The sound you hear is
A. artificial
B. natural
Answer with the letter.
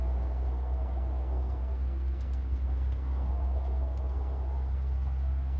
A